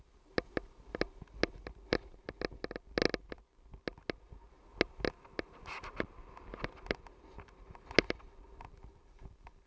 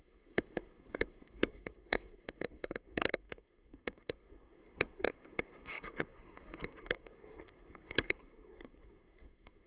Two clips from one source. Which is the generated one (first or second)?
second